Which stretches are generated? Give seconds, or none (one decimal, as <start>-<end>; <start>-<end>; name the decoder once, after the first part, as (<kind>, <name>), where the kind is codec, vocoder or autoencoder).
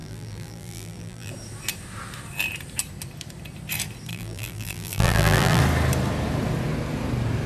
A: 0.0-1.3 (vocoder, BigVGAN v2); 4.1-5.6